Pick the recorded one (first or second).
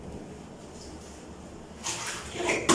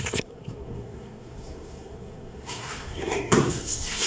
first